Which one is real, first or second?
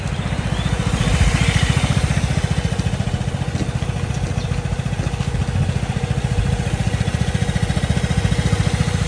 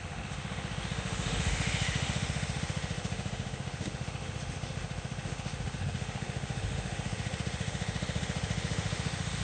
first